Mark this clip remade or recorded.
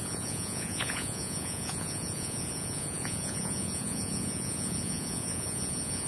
remade